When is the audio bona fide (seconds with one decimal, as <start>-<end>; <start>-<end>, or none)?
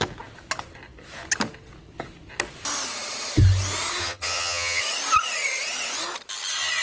0.0-4.0; 4.8-6.8